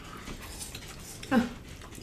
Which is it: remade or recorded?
recorded